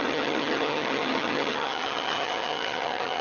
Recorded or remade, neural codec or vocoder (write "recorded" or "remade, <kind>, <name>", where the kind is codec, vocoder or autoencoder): remade, vocoder, HiFi-GAN